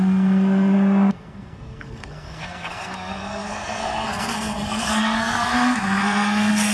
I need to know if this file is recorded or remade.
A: remade